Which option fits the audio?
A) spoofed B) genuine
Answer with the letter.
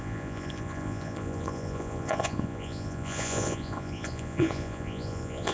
A